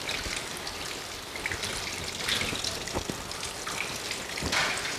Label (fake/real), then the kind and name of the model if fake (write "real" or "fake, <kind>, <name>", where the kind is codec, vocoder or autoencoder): real